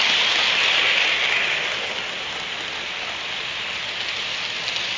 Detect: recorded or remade recorded